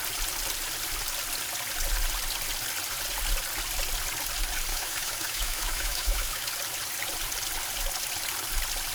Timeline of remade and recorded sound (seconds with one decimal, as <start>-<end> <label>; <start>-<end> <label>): 0.0-4.7 recorded; 4.7-6.5 remade; 6.5-8.9 recorded